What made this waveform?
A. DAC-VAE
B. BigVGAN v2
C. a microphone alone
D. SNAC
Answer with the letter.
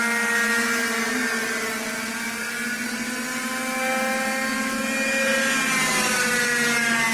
C